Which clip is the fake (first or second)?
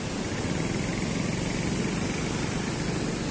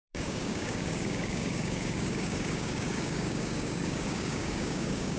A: second